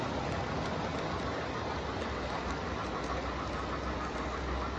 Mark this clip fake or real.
real